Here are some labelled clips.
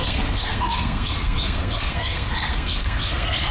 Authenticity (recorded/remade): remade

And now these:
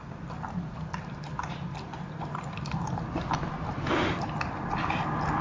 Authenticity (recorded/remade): recorded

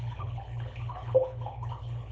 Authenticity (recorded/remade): remade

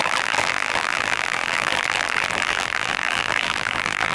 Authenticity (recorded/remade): remade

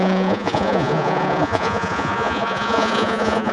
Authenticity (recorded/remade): remade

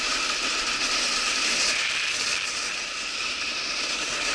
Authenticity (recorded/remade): recorded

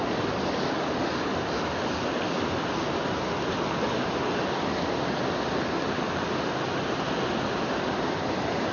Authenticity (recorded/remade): recorded